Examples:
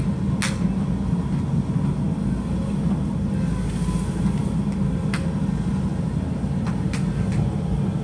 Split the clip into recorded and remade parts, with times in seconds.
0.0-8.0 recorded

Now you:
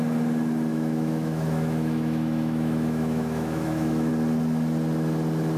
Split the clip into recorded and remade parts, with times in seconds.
0.0-0.7 recorded; 0.7-4.1 remade; 4.1-5.6 recorded

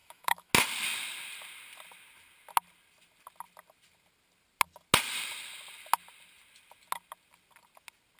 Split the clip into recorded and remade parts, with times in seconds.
0.0-0.5 remade; 0.5-8.2 recorded

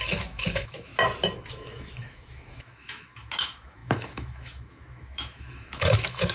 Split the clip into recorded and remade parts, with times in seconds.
0.0-0.9 remade; 0.9-1.5 recorded; 1.5-6.3 remade

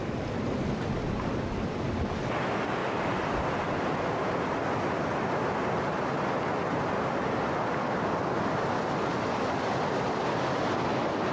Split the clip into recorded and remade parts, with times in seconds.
0.0-11.3 recorded

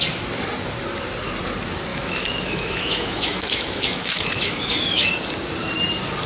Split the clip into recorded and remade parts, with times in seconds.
0.0-1.9 recorded; 1.9-5.1 remade; 5.1-6.3 recorded

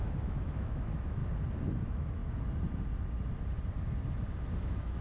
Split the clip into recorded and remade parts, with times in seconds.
0.0-1.2 remade; 1.2-1.8 recorded; 1.8-2.2 remade; 2.2-4.6 recorded; 4.6-5.0 remade